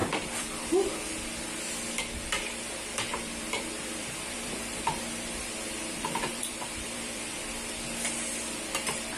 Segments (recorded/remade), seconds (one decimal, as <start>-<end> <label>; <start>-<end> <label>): 0.0-0.7 remade; 0.7-3.1 recorded; 3.1-7.4 remade; 7.4-9.2 recorded